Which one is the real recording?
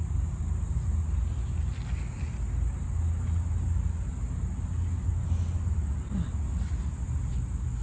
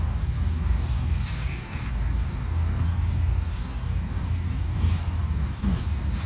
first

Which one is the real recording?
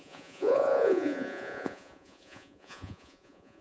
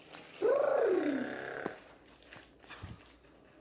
second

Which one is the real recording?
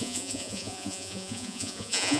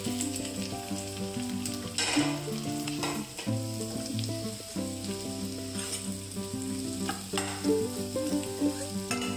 second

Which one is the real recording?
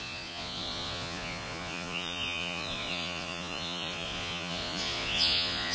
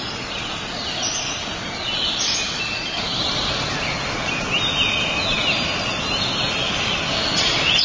second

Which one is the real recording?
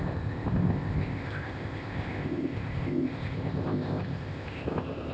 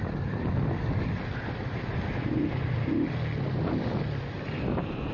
second